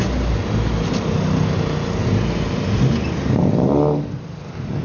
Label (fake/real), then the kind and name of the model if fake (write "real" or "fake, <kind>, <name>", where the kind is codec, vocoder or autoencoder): real